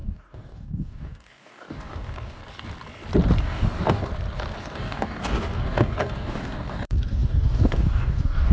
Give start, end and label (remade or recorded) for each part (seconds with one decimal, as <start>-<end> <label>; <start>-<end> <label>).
0.0-2.4 remade; 2.4-3.4 recorded; 3.4-4.1 remade; 4.1-4.6 recorded; 4.6-8.5 remade